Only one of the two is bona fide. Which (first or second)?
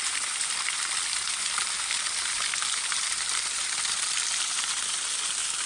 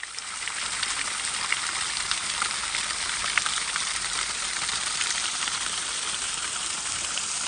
first